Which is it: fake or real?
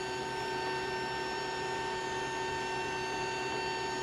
real